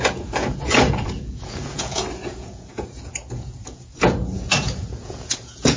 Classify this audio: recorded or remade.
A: remade